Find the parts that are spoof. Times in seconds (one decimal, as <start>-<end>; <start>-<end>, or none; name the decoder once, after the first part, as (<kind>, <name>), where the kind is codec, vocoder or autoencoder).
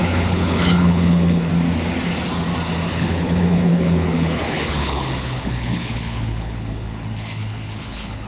0.0-1.5 (codec, HILCodec); 2.9-8.3